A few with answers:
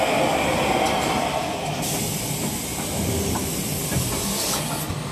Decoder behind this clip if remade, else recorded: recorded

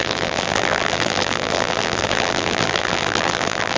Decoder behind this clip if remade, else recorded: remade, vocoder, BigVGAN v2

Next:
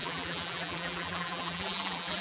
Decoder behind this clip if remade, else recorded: remade, vocoder, BigVGAN v2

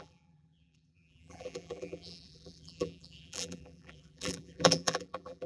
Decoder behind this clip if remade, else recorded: remade, vocoder, BigVGAN v2